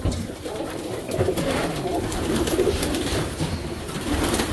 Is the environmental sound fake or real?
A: fake